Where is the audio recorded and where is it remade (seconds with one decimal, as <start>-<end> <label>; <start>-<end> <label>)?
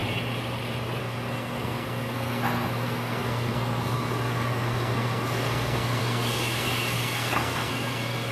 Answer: 0.0-1.0 recorded; 1.0-8.3 remade